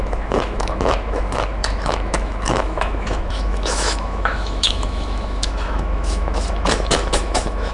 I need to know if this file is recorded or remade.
remade